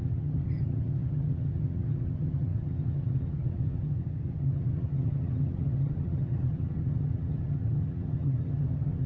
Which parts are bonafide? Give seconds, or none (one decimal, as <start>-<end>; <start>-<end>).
none